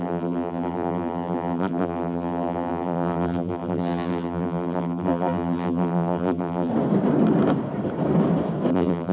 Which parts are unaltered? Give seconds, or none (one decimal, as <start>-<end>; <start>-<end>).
6.7-8.7